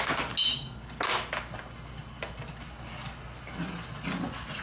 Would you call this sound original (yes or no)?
yes